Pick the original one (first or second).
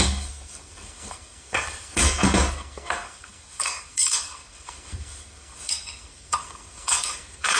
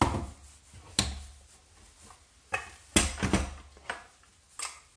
second